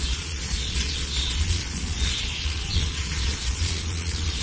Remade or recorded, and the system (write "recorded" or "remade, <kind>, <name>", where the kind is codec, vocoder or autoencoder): remade, vocoder, Vocos